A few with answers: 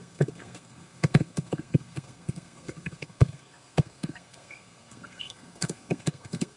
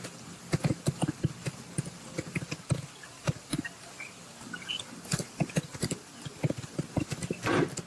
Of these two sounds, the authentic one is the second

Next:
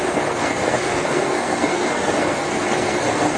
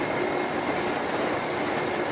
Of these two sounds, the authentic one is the second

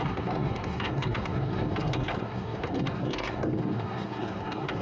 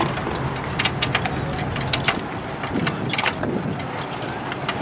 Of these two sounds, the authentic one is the second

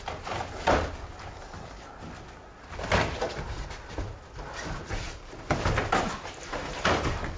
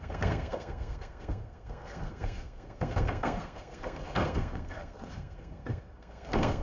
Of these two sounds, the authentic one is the first